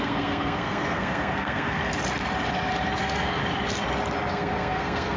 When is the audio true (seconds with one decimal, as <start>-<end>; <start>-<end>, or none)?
1.8-3.0; 3.4-4.3